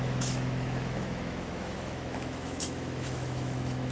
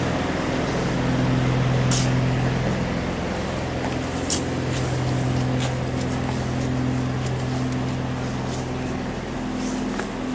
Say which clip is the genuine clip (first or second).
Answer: second